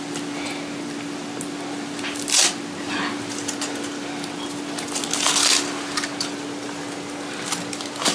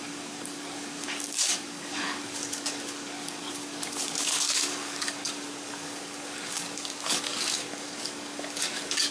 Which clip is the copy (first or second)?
second